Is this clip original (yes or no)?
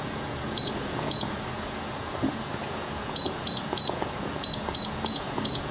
no